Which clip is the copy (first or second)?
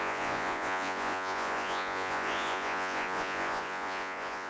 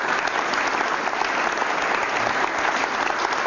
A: first